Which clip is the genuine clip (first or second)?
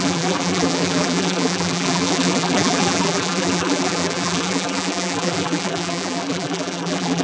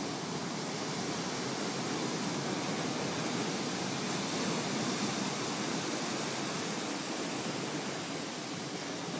second